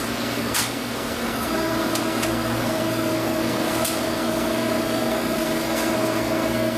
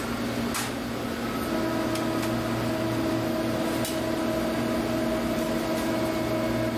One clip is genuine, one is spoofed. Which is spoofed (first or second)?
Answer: first